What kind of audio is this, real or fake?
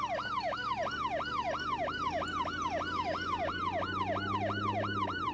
real